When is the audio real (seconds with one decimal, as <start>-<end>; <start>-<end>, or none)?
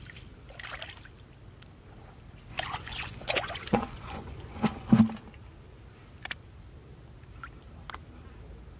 0.0-2.5; 5.0-8.8